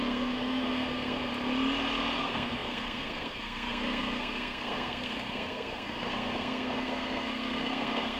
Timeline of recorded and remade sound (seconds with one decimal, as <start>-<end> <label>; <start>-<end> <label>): 0.0-1.3 remade; 1.3-2.2 recorded; 2.2-8.2 remade

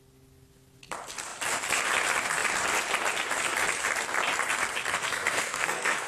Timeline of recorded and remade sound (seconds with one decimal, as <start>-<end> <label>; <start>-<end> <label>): 0.0-4.8 recorded; 4.8-6.1 remade

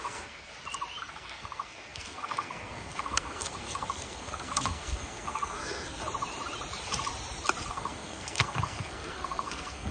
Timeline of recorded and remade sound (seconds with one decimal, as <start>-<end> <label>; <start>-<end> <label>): 0.0-0.5 remade; 0.5-1.0 recorded; 1.0-6.0 remade; 6.0-7.7 recorded; 7.7-9.9 remade

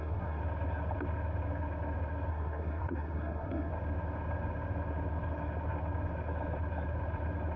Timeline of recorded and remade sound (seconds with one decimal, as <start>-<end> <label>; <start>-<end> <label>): 0.0-0.4 remade; 0.4-2.3 recorded; 2.3-3.7 remade; 3.7-7.6 recorded

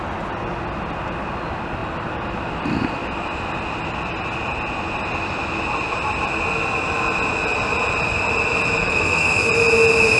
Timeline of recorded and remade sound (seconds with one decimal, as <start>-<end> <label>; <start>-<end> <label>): 0.0-8.8 recorded; 8.8-9.5 remade; 9.5-10.2 recorded

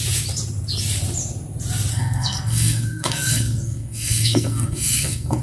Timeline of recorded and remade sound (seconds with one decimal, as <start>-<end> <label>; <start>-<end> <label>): 0.0-1.9 recorded; 1.9-5.4 remade

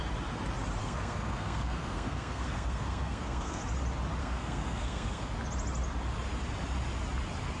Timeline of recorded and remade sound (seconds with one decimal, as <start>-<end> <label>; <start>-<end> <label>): 0.0-0.8 recorded; 0.8-3.6 remade; 3.6-4.2 recorded; 4.2-5.3 remade; 5.3-7.6 recorded

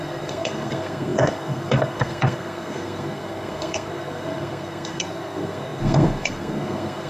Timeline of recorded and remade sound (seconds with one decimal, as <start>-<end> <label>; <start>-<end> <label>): 0.0-7.1 remade